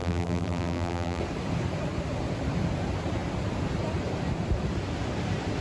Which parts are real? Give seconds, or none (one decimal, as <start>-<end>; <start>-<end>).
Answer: 1.2-5.6